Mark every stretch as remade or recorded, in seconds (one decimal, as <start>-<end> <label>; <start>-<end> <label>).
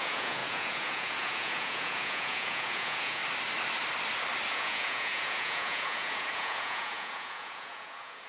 0.0-3.2 remade; 3.2-4.5 recorded; 4.5-8.3 remade